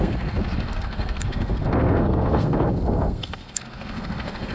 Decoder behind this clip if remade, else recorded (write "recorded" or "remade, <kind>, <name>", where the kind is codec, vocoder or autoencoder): remade, codec, SNAC